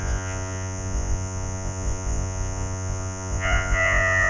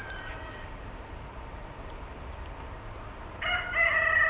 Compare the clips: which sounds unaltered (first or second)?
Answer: second